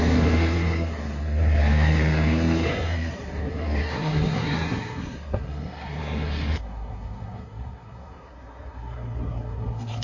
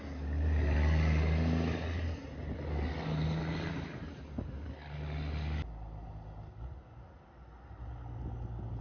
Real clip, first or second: second